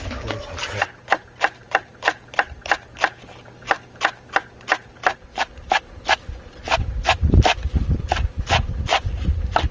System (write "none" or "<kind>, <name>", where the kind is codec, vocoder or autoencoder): none